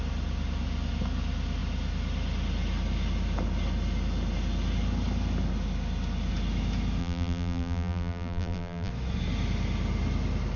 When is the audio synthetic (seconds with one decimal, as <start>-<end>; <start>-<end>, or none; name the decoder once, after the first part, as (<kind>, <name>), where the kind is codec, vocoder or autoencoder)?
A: 7.0-8.9 (vocoder, BigVGAN v2)